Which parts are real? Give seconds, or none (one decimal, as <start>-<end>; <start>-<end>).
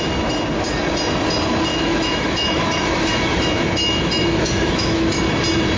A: 0.0-1.7; 5.2-5.8